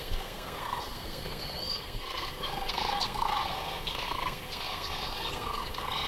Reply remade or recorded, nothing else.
remade